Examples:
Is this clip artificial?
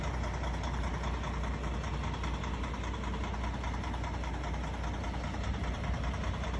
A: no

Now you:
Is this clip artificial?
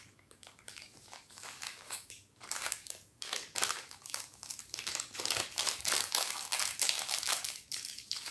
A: yes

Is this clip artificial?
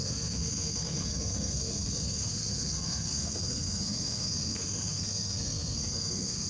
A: yes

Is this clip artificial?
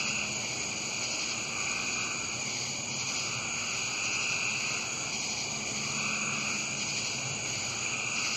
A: no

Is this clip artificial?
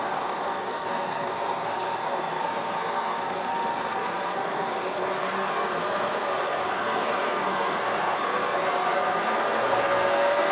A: yes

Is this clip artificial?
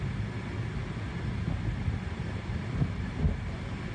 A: no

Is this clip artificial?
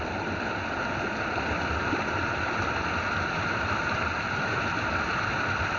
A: no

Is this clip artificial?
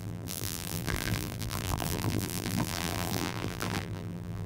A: yes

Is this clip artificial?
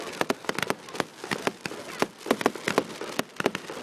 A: no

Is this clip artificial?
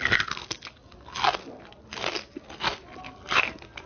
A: no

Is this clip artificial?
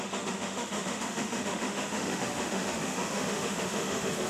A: yes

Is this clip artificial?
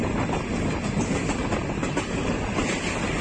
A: no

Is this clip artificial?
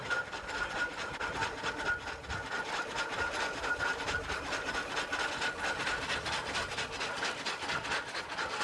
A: no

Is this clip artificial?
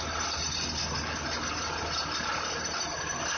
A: no